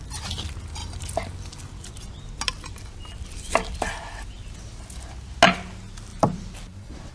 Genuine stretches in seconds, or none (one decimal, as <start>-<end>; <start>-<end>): 0.0-0.8; 2.0-6.1